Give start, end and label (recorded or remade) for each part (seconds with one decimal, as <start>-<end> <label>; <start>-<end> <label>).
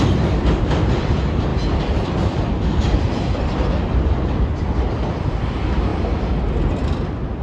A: 0.0-5.9 remade; 5.9-6.7 recorded; 6.7-7.4 remade